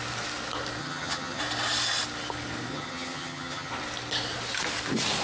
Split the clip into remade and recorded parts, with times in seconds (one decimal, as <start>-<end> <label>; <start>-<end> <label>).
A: 0.0-0.8 recorded; 0.8-1.4 remade; 1.4-2.7 recorded; 2.7-3.7 remade; 3.7-5.2 recorded